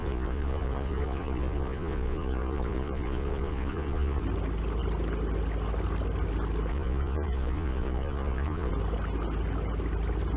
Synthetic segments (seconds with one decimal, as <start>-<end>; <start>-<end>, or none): 0.0-4.2; 6.7-8.7